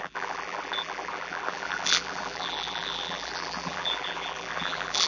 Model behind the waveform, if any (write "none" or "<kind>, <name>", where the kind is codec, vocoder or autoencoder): vocoder, BigVGAN v2